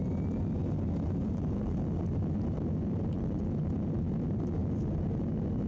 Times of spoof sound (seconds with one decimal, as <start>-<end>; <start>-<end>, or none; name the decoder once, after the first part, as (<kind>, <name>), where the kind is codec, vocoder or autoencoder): none